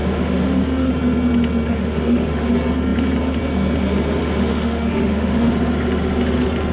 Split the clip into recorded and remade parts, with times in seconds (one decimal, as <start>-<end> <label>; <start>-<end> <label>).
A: 0.0-0.9 remade; 0.9-1.7 recorded; 1.7-2.5 remade; 2.5-4.2 recorded; 4.2-5.5 remade; 5.5-6.7 recorded